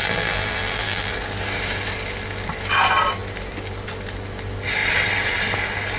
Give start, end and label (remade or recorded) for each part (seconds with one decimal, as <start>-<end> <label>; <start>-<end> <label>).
0.0-1.1 remade; 1.1-6.0 recorded